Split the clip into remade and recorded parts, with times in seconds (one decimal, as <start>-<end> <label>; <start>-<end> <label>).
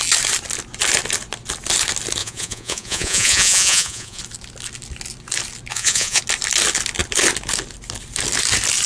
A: 0.0-2.2 recorded; 2.2-4.2 remade; 4.2-5.7 recorded; 5.7-6.2 remade; 6.2-8.9 recorded